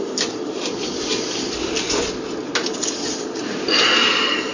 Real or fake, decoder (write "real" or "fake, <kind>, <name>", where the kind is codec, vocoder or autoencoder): real